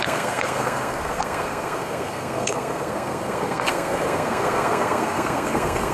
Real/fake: fake